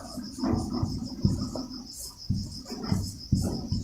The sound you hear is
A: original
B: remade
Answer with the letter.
A